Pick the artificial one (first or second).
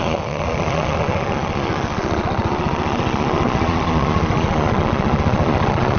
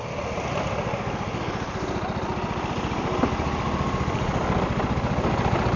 first